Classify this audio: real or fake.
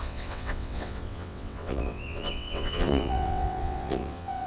fake